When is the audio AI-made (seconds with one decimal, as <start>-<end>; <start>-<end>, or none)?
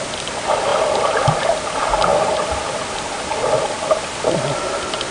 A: none